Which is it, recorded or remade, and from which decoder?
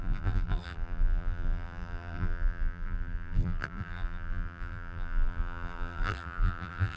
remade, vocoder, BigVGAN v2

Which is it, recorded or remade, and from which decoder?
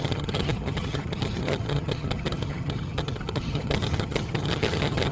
remade, vocoder, HiFi-GAN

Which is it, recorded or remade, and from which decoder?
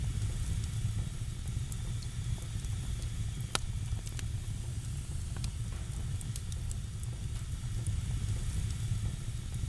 recorded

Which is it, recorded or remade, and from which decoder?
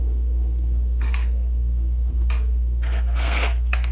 remade, codec, SNAC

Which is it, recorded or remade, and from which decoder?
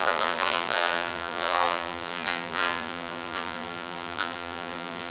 remade, vocoder, BigVGAN v2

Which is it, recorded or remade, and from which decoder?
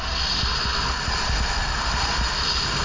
recorded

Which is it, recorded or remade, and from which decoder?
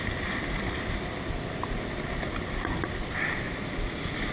recorded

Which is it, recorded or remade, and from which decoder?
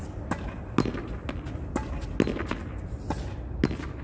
recorded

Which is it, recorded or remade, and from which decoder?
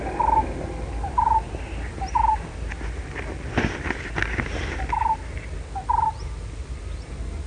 recorded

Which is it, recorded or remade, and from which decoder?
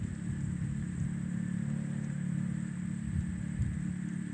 recorded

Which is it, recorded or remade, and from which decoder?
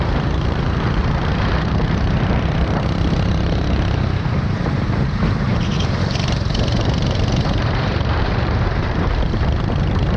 remade, vocoder, BigVGAN v2